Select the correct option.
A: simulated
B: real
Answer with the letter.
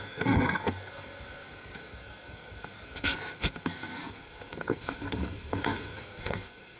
A